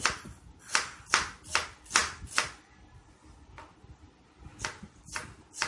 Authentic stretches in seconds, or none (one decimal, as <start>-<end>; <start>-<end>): 0.0-5.7